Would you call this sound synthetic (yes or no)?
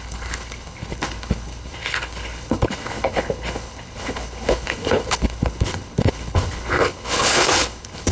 yes